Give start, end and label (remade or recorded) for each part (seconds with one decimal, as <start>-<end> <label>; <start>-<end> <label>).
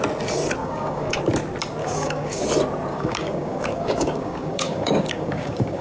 0.0-0.6 recorded; 0.6-1.2 remade; 1.2-1.8 recorded; 1.8-2.4 remade; 2.4-2.9 recorded; 2.9-5.8 remade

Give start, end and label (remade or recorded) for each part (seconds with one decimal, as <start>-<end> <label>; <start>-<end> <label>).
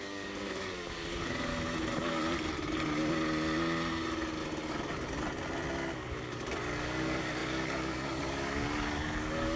0.0-1.5 remade; 1.5-5.9 recorded; 5.9-9.6 remade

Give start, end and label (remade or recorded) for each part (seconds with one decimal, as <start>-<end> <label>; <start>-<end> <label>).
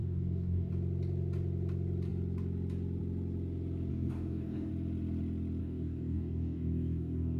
0.0-0.7 remade; 0.7-3.9 recorded; 3.9-4.7 remade; 4.7-5.6 recorded; 5.6-7.4 remade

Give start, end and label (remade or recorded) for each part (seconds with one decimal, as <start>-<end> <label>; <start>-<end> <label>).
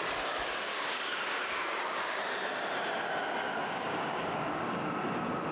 0.0-0.7 recorded; 0.7-2.2 remade; 2.2-3.6 recorded; 3.6-4.7 remade; 4.7-5.5 recorded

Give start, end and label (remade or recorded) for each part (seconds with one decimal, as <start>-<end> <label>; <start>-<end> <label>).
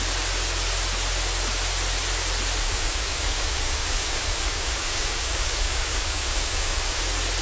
0.0-2.6 recorded; 2.6-7.0 remade; 7.0-7.4 recorded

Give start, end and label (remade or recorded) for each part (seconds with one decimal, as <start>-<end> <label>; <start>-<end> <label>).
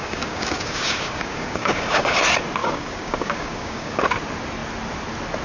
0.0-2.2 remade; 2.2-2.6 recorded; 2.6-4.0 remade; 4.0-5.4 recorded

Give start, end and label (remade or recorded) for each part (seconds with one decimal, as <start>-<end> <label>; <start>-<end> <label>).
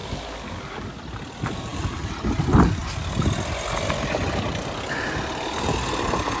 0.0-1.0 remade; 1.0-6.4 recorded